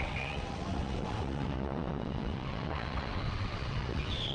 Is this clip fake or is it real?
fake